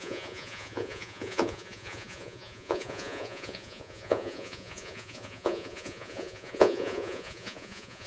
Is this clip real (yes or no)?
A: no